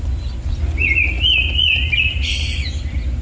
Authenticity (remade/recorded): recorded